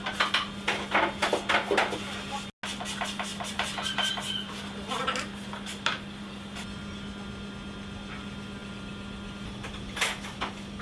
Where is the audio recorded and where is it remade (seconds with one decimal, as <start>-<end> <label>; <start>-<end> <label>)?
0.0-10.8 recorded